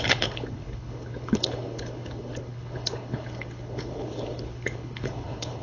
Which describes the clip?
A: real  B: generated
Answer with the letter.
B